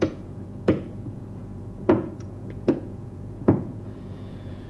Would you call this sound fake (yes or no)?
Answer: yes